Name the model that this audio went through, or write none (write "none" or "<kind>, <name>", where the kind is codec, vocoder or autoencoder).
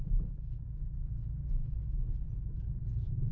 none